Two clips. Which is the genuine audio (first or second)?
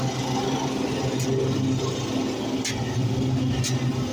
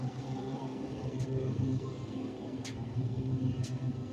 first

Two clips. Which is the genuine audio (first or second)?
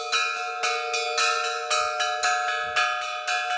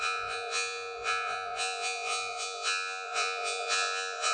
first